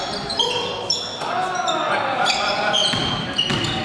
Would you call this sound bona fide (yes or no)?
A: yes